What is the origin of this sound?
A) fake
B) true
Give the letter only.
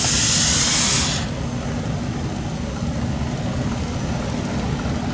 B